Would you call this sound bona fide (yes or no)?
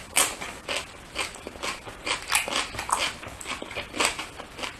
yes